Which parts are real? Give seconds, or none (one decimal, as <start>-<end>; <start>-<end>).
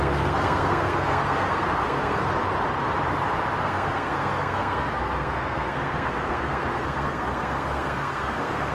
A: 2.2-3.6